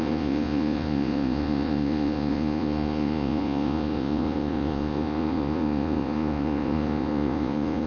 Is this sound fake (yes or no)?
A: yes